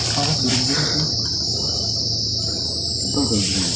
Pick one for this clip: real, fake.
real